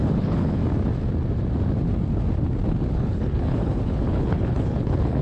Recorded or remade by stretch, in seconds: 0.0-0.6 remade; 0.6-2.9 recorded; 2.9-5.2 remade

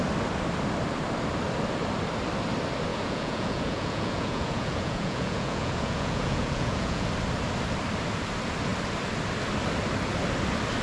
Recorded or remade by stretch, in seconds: 0.0-2.9 recorded; 2.9-7.1 remade; 7.1-10.8 recorded

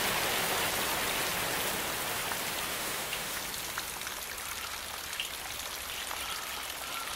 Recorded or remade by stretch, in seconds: 0.0-2.7 recorded; 2.7-3.4 remade; 3.4-7.2 recorded

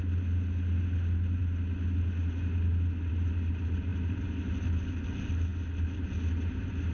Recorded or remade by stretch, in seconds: 0.0-6.9 recorded